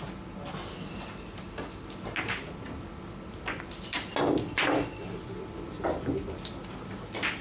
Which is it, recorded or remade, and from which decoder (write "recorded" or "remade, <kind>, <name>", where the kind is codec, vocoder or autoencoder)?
recorded